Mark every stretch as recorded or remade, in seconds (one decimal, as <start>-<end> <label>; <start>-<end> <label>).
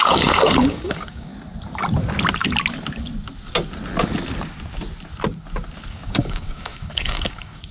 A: 0.0-1.3 remade; 1.3-5.9 recorded; 5.9-7.7 remade